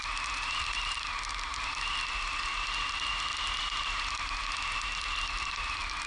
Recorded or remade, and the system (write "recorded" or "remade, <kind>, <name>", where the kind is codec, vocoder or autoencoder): recorded